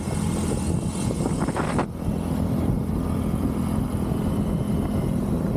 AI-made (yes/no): no